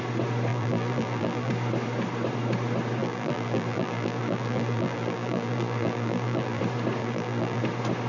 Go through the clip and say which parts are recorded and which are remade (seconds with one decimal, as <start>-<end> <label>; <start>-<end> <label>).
0.0-0.5 recorded; 0.5-1.5 remade; 1.5-3.0 recorded; 3.0-6.6 remade; 6.6-7.0 recorded; 7.0-7.6 remade; 7.6-8.1 recorded